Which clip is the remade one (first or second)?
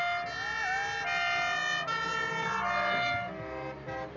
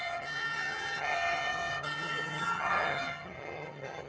second